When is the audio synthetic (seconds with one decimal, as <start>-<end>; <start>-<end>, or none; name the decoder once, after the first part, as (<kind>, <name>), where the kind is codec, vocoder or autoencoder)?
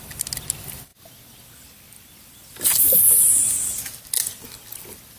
none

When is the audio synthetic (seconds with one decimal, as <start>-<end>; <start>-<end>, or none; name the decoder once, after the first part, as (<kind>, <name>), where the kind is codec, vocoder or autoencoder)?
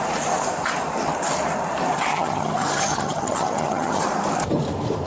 2.1-4.0 (vocoder, HiFi-GAN)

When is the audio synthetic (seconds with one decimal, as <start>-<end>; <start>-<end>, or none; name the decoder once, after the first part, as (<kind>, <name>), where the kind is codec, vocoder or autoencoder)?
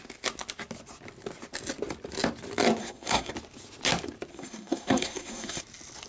2.8-3.3 (codec, SNAC); 4.3-5.6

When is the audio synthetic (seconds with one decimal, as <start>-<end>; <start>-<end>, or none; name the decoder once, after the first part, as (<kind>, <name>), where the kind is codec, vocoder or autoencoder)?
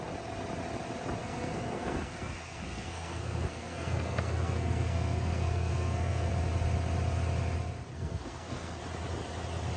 1.2-6.3 (codec, SNAC); 7.9-8.8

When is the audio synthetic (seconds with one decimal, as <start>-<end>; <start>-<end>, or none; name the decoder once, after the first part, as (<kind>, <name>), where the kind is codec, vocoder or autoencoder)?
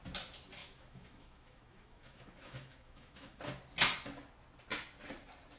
0.6-3.4 (autoencoder, DAC-VAE)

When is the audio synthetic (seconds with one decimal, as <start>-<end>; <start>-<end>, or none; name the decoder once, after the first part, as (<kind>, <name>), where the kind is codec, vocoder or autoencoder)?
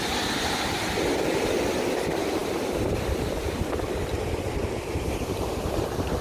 none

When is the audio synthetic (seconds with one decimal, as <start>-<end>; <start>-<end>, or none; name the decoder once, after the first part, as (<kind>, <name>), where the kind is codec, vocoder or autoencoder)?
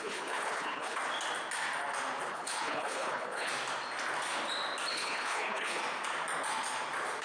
0.0-1.0 (codec, HILCodec); 2.3-3.5; 4.9-5.8